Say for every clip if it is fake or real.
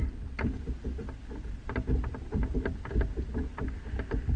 real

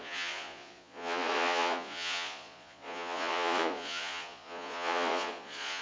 fake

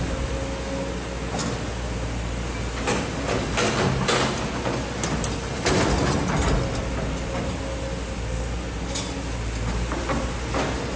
real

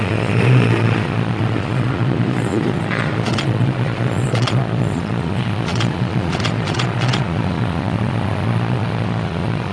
fake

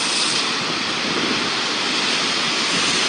real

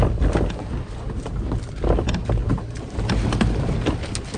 real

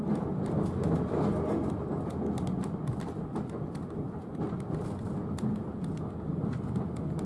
real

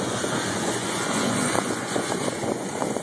fake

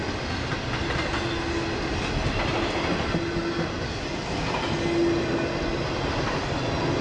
real